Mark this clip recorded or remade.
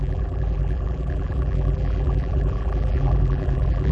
remade